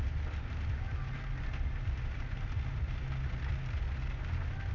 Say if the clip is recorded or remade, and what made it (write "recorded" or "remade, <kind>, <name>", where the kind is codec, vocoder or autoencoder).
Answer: recorded